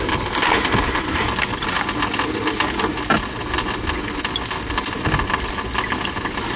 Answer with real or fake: real